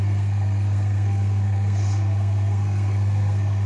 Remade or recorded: remade